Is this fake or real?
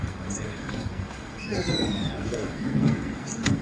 fake